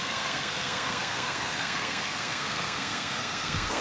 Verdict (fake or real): fake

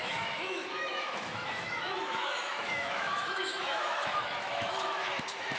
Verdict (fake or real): fake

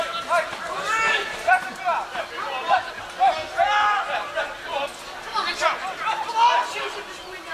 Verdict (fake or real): real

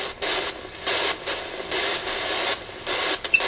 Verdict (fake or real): real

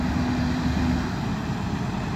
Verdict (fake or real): real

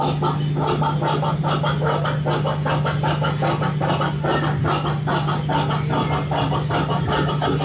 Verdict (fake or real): real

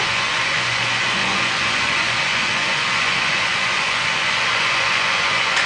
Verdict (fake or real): fake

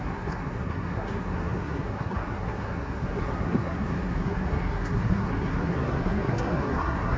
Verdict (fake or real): fake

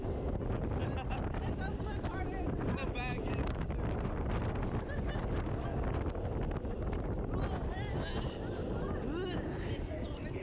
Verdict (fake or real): real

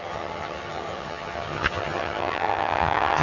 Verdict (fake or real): fake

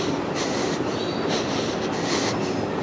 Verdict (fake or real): real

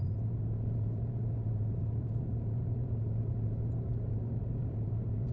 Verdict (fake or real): fake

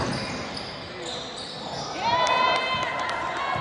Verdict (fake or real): real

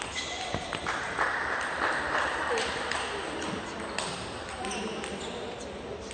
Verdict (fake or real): real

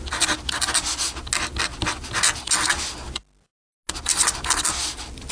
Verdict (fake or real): real